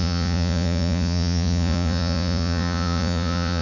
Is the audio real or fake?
fake